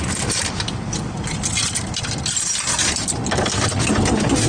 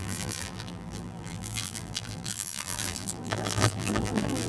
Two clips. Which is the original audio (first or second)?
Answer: first